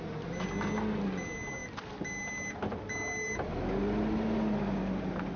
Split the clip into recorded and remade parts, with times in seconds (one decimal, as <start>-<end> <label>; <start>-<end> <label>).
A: 0.0-5.4 recorded